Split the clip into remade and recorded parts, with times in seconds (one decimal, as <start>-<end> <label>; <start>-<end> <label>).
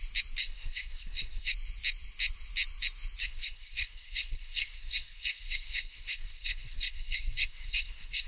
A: 0.0-0.4 recorded; 0.4-1.5 remade; 1.5-3.2 recorded; 3.2-8.3 remade